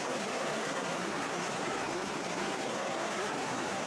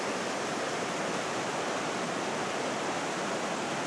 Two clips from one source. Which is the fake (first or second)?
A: first